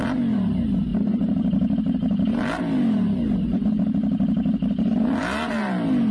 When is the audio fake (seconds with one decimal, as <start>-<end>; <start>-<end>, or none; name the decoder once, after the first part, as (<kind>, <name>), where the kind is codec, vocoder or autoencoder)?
0.9-2.4 (vocoder, BigVGAN v2)